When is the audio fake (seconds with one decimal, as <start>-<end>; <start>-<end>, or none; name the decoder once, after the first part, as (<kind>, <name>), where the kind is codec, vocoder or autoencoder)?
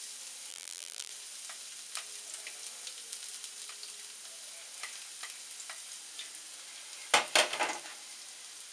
0.5-1.1 (vocoder, BigVGAN v2)